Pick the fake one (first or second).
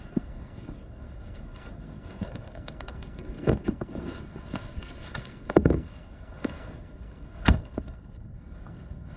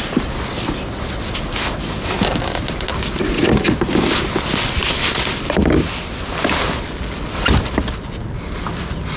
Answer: first